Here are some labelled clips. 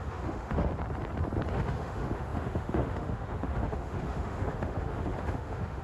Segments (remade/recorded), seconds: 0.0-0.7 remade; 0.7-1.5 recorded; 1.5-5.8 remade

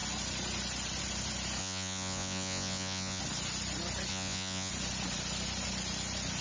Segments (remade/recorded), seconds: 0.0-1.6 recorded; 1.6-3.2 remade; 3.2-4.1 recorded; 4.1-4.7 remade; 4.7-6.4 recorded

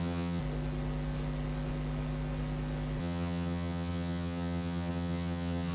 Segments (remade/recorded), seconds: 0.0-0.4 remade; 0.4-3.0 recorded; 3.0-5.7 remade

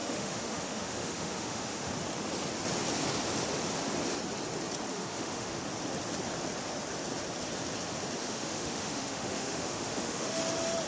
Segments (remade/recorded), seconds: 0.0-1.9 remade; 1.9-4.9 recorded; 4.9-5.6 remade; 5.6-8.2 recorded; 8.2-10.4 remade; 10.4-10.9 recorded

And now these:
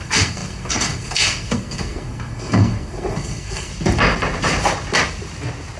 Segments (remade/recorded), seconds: 0.0-3.7 remade; 3.7-5.8 recorded